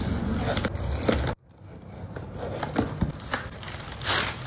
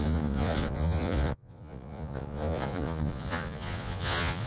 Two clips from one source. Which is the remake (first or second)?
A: second